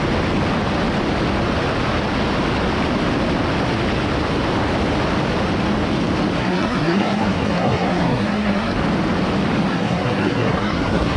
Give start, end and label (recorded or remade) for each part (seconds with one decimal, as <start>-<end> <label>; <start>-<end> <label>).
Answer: 0.0-6.4 recorded; 6.4-8.8 remade; 8.8-9.7 recorded; 9.7-11.2 remade